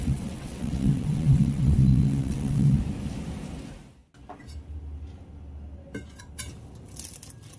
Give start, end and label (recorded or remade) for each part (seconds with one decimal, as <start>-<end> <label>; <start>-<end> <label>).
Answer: 0.0-2.8 remade; 2.8-7.6 recorded